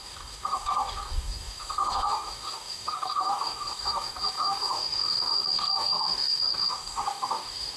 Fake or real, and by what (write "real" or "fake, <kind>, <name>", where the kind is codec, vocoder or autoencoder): fake, codec, DAC